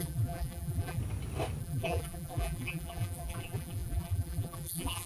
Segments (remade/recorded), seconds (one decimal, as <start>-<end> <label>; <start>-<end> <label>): 0.0-1.0 remade; 1.0-1.6 recorded; 1.6-5.1 remade